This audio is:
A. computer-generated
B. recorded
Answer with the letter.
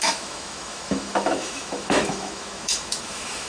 A